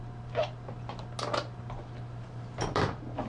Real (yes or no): yes